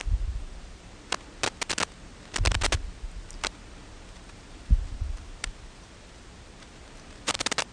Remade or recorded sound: recorded